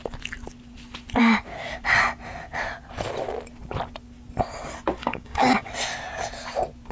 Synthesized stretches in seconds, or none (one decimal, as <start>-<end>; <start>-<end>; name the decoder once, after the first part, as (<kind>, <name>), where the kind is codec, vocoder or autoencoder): 5.0-5.7 (codec, DAC)